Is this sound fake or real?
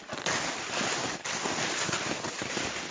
real